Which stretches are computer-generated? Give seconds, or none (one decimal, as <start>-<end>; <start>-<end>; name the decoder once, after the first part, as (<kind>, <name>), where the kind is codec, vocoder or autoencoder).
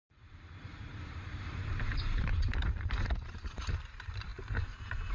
0.0-4.3 (vocoder, BigVGAN v2)